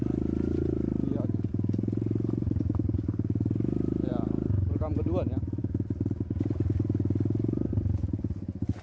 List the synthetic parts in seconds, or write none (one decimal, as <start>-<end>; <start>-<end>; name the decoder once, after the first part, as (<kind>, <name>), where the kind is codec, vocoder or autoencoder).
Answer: none